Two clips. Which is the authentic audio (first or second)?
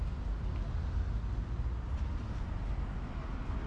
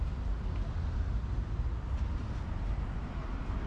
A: first